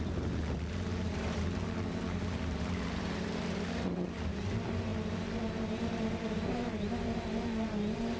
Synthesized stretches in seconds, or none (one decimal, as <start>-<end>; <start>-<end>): 0.0-8.2

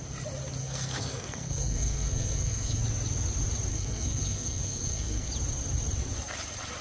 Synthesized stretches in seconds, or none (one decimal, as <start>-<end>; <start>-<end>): 0.6-2.8; 3.7-5.3

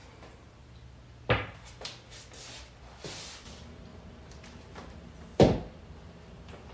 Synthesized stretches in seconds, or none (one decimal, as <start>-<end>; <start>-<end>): 0.0-0.5; 3.9-5.2